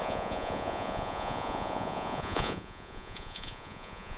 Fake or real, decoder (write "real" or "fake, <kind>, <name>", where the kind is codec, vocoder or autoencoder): fake, vocoder, Vocos